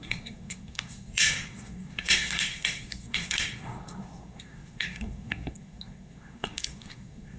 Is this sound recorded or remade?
remade